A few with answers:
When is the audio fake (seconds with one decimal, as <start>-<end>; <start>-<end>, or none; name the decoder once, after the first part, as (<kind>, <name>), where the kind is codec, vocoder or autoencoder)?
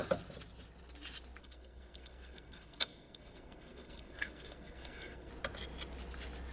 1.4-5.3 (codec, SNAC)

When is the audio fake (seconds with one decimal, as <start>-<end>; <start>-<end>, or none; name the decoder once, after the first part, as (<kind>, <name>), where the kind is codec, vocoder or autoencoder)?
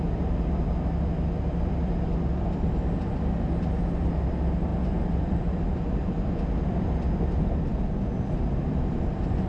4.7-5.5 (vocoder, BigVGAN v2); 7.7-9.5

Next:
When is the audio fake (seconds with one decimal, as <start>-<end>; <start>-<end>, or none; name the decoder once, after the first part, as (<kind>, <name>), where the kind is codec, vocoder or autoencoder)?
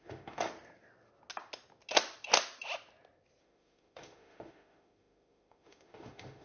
0.0-0.5 (autoencoder, DAC-VAE); 3.4-6.4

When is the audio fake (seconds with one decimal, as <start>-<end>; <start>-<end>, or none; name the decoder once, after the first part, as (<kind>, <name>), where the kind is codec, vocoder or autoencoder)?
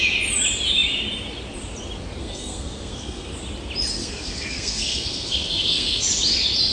2.2-3.3 (codec, SNAC); 4.0-6.0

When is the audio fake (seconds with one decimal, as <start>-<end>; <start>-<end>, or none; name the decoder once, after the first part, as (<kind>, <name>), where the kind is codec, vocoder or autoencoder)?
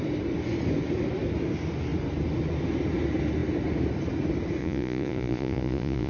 4.6-6.1 (vocoder, Vocos)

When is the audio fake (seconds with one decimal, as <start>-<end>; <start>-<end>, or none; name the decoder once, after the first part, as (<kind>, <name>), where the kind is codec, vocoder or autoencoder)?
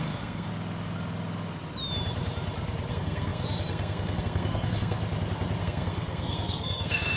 0.0-0.5 (codec, SNAC); 2.9-5.0; 5.6-7.2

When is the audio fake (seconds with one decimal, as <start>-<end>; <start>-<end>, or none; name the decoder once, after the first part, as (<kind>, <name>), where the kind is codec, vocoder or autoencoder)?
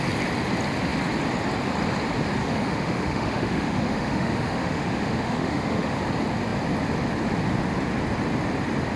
2.4-6.0 (autoencoder, DAC-VAE)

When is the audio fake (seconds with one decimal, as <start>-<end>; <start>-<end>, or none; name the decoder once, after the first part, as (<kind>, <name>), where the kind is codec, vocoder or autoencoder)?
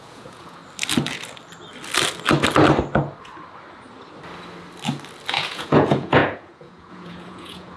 0.0-0.6 (vocoder, Vocos); 5.3-7.8